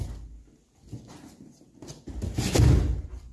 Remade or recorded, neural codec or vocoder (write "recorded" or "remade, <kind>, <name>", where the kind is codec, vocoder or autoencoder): recorded